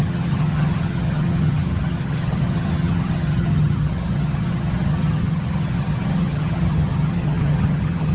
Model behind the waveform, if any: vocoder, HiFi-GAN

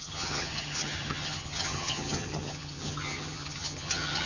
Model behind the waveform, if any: vocoder, HiFi-GAN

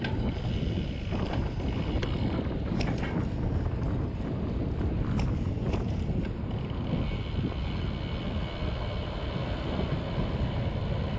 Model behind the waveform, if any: none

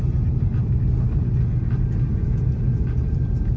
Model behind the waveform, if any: none